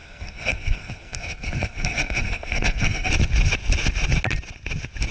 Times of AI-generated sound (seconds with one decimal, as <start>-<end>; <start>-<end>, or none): 0.0-3.1